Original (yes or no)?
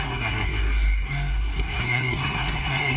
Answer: no